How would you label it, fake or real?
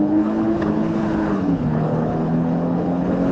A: fake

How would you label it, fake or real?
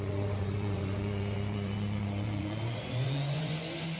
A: fake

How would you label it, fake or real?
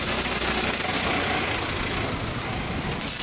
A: real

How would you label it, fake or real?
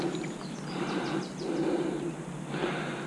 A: real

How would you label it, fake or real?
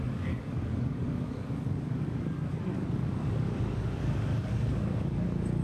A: fake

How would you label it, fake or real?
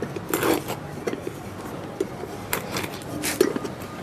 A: real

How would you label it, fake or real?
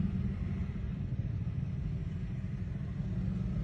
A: real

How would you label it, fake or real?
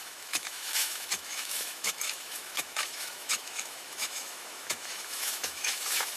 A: fake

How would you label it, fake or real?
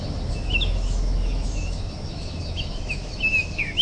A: fake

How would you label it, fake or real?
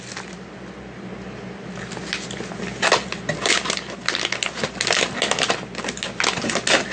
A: real